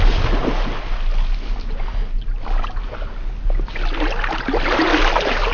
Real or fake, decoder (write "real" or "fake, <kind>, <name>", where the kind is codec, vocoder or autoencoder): real